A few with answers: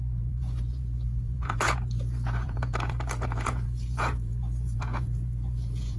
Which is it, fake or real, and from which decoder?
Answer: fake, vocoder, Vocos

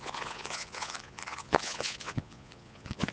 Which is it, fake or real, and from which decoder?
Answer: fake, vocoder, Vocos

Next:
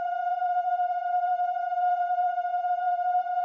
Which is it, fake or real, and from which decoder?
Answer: fake, vocoder, Vocos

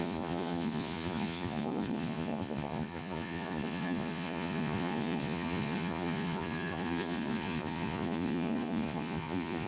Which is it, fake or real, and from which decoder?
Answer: fake, vocoder, Vocos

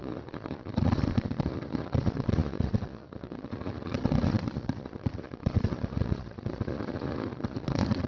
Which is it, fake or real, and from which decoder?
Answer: fake, vocoder, Vocos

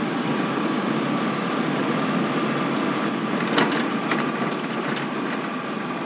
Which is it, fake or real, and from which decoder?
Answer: real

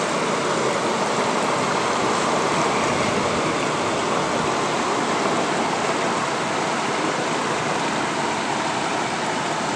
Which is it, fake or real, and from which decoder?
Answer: real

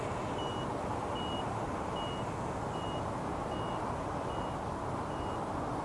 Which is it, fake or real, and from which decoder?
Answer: real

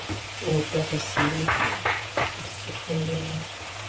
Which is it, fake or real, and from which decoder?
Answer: fake, vocoder, Vocos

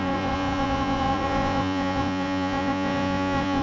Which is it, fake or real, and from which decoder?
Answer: fake, vocoder, Vocos